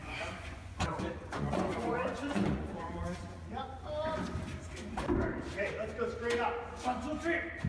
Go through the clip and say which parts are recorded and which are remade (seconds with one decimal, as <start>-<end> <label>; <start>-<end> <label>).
0.0-3.6 remade; 3.6-7.7 recorded